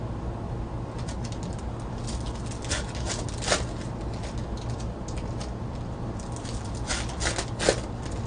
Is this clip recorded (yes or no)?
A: yes